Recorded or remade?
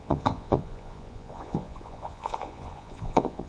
remade